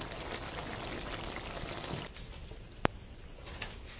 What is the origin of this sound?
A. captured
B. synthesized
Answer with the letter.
A